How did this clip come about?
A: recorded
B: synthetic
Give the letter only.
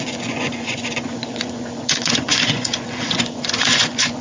B